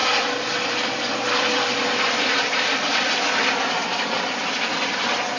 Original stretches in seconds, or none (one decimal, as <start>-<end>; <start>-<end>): 3.2-3.8; 4.3-5.4